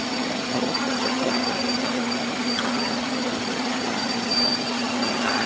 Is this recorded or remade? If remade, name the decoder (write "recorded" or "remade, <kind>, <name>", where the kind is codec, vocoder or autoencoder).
remade, vocoder, HiFi-GAN